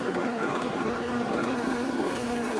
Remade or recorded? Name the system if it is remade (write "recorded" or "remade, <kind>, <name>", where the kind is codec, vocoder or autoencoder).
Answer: remade, codec, SNAC